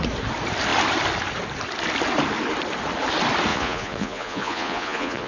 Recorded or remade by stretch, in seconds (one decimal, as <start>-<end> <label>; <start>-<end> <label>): 0.0-3.5 recorded; 3.5-5.3 remade

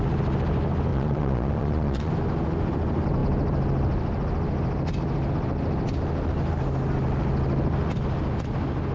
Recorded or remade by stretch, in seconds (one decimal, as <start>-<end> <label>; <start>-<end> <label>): 0.0-0.9 recorded; 0.9-2.1 remade; 2.1-8.9 recorded

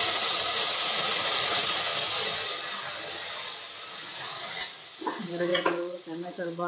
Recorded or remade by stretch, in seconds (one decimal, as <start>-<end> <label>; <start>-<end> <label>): 0.0-1.9 remade; 1.9-3.9 recorded; 3.9-6.7 remade

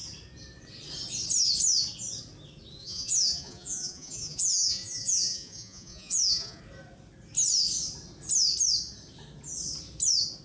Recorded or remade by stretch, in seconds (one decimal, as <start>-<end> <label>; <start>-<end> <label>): 0.0-2.8 recorded; 2.8-6.6 remade; 6.6-10.4 recorded

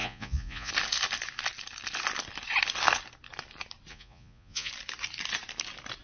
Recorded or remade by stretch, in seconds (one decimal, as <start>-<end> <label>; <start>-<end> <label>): 0.0-0.7 remade; 0.7-3.9 recorded; 3.9-4.7 remade; 4.7-6.0 recorded